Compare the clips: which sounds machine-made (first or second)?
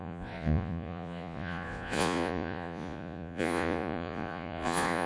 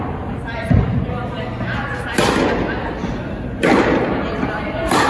first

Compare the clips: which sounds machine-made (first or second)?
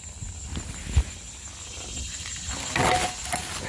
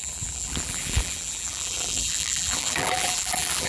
second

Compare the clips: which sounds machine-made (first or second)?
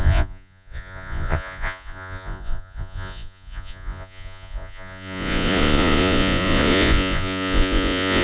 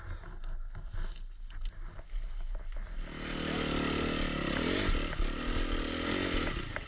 first